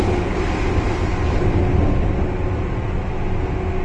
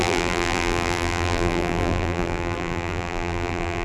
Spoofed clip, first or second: second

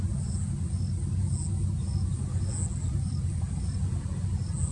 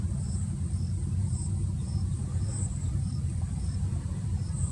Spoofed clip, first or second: second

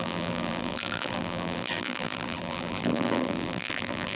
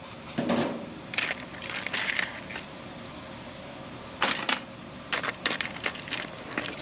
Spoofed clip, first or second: first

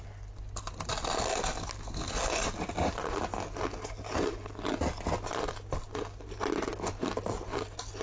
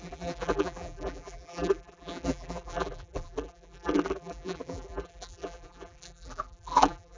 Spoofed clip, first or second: second